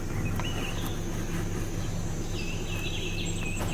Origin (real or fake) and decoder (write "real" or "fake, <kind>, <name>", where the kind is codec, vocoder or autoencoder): real